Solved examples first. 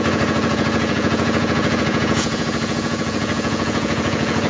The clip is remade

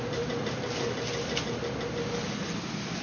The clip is recorded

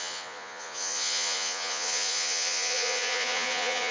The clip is remade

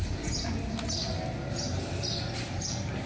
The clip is recorded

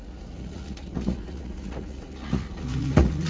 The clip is remade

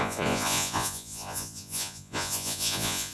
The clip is remade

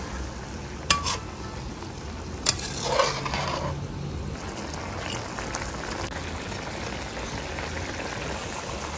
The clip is recorded